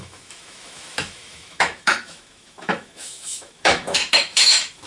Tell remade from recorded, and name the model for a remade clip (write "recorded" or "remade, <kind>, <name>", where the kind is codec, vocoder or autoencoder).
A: remade, autoencoder, DAC-VAE